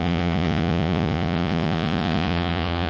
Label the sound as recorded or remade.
remade